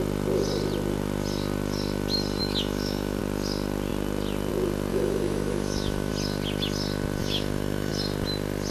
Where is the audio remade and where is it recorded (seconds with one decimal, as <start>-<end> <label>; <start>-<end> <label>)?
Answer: 0.0-2.4 recorded; 2.4-3.2 remade; 3.2-4.9 recorded; 4.9-6.1 remade; 6.1-7.2 recorded; 7.2-7.9 remade; 7.9-8.7 recorded

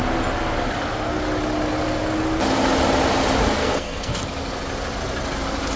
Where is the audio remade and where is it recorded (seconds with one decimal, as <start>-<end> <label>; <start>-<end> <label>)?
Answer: 0.0-3.6 recorded; 3.6-4.2 remade; 4.2-5.8 recorded

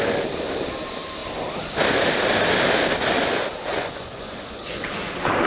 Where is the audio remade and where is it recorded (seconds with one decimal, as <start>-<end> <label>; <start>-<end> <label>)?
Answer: 0.0-3.6 recorded; 3.6-5.5 remade

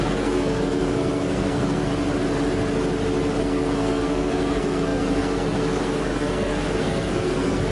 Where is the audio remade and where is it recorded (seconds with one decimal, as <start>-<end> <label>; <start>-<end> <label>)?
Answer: 0.0-1.9 remade; 1.9-3.4 recorded; 3.4-7.7 remade

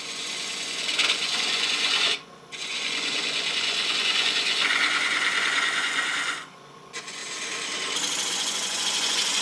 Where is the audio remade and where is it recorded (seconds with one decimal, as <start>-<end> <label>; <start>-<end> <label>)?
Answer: 0.0-7.2 remade; 7.2-8.3 recorded; 8.3-9.4 remade